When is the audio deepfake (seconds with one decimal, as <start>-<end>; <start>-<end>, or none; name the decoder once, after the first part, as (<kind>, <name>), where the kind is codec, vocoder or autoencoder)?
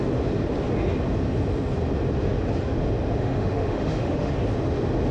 3.2-4.3 (autoencoder, DAC-VAE)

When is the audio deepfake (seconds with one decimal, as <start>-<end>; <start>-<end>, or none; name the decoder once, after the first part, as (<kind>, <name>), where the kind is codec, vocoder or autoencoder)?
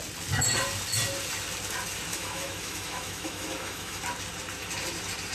2.1-4.0 (autoencoder, DAC-VAE)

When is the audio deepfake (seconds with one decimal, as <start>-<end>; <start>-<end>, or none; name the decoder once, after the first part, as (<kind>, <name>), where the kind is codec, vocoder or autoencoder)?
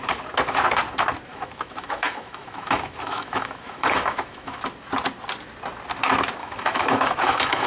1.3-4.6 (autoencoder, DAC-VAE); 6.4-7.7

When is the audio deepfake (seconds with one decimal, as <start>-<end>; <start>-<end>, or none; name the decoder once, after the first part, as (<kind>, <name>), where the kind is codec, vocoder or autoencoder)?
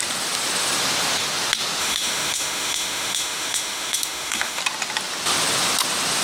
1.8-4.6 (autoencoder, DAC-VAE)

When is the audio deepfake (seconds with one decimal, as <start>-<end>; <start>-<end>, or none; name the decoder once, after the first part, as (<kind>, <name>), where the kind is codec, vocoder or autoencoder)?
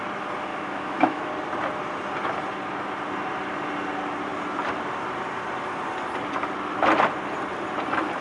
0.5-1.3 (autoencoder, DAC-VAE)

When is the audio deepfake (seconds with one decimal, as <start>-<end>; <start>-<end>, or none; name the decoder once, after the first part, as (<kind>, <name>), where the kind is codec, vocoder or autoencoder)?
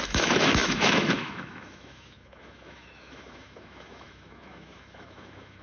0.0-5.6 (autoencoder, DAC-VAE)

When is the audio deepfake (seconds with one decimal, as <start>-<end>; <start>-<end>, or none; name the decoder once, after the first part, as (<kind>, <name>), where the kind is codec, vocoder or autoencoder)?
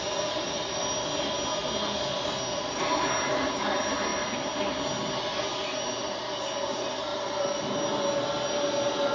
none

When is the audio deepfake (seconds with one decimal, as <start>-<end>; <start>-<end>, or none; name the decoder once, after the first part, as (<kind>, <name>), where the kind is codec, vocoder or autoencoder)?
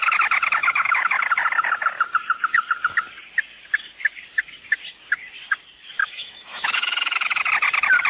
0.6-1.2 (autoencoder, DAC-VAE); 6.0-7.5